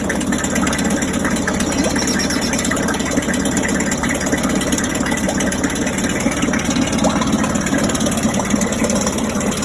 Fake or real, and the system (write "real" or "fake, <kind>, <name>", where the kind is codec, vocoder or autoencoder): real